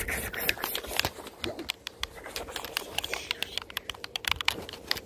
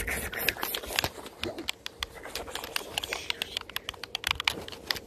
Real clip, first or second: second